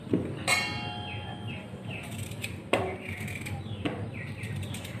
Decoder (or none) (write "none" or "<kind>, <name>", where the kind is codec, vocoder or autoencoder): none